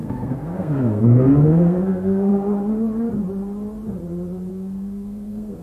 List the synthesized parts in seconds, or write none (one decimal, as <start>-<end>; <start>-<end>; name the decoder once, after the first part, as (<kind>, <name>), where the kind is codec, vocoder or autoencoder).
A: 0.0-2.3 (codec, SNAC); 4.5-5.6